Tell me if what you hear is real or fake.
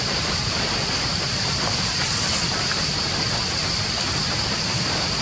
fake